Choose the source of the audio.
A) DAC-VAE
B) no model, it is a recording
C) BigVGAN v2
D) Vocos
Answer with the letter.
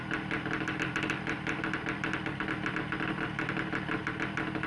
B